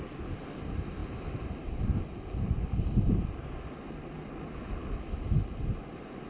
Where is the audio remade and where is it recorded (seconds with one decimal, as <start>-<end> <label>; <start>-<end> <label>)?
0.0-6.3 recorded